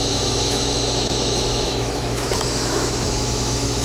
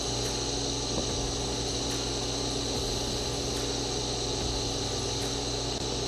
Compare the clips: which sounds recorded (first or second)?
second